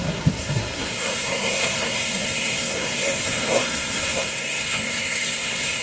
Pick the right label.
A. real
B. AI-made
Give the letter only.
B